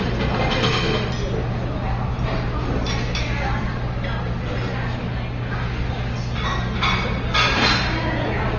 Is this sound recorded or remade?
recorded